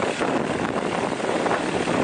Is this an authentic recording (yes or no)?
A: yes